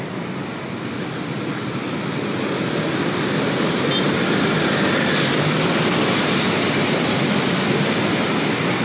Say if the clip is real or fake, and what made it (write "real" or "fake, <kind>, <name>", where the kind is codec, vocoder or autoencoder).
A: real